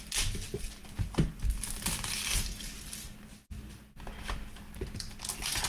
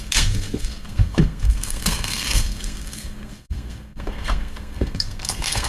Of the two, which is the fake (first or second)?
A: second